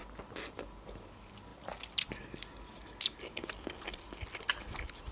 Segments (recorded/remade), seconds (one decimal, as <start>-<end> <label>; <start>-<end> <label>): 0.0-5.1 recorded